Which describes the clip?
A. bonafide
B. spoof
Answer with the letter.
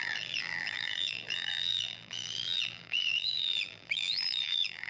B